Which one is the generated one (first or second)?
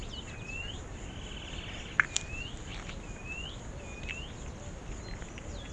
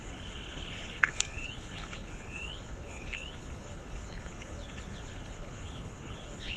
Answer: second